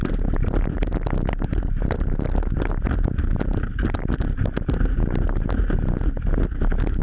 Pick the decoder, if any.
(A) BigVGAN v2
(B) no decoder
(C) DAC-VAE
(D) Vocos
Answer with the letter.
B